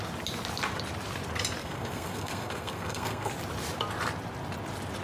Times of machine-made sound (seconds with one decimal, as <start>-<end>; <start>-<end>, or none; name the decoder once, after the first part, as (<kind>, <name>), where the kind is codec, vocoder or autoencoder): 1.6-3.3 (codec, SNAC)